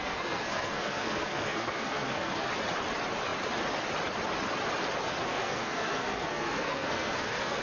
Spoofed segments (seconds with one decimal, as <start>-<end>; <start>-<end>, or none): 0.0-2.5; 5.2-7.6

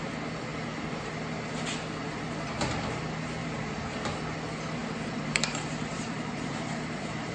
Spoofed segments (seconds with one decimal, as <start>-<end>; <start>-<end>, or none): 3.4-4.1; 4.8-7.3

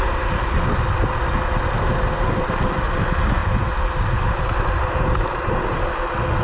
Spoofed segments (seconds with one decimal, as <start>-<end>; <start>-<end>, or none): none

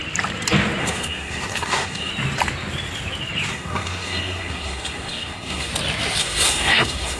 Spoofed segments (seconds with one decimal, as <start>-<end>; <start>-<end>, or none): 0.8-2.1; 3.5-5.7; 6.2-7.2

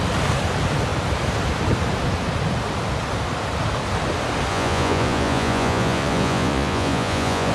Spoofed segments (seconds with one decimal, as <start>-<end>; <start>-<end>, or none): 4.5-7.5